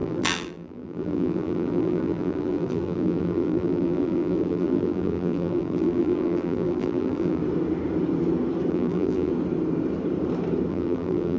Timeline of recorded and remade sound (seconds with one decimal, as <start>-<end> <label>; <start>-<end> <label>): 0.0-7.4 remade; 7.4-8.7 recorded; 8.7-9.3 remade; 9.3-10.7 recorded; 10.7-11.4 remade